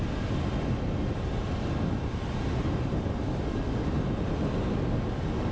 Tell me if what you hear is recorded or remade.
recorded